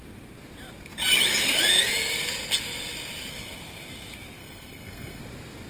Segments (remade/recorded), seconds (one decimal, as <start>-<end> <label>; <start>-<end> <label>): 0.0-4.4 recorded; 4.4-5.2 remade; 5.2-5.7 recorded